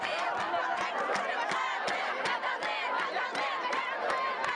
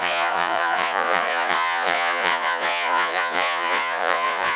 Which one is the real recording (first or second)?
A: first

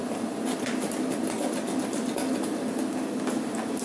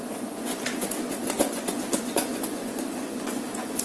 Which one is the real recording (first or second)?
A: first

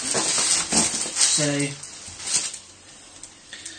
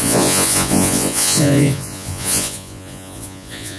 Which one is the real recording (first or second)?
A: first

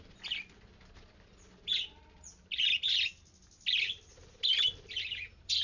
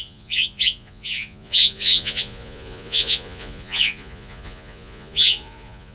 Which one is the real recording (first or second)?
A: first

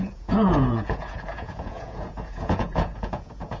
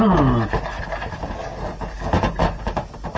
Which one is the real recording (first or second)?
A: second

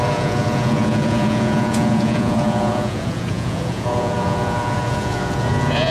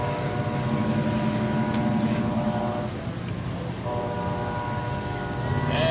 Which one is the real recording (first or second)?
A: second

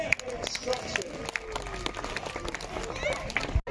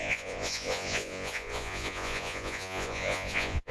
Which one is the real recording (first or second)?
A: first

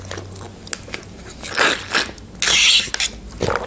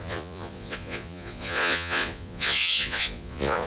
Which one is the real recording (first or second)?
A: first